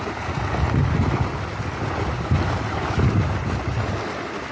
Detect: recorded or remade recorded